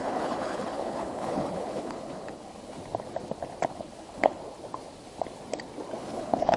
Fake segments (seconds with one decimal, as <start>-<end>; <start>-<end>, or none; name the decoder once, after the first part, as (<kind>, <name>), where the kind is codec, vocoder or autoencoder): 0.0-2.8 (codec, HILCodec); 3.7-4.4; 6.0-6.6